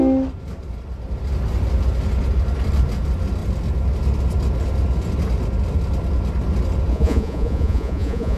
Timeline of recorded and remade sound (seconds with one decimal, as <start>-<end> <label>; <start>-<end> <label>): 0.0-6.9 recorded; 6.9-8.4 remade